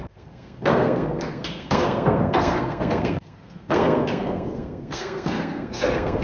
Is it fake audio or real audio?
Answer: fake